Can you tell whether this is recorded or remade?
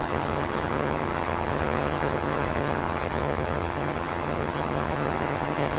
remade